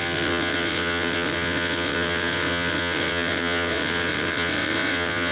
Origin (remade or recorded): remade